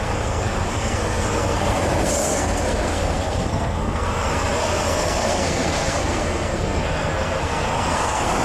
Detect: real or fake fake